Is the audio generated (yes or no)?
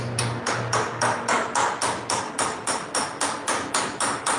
no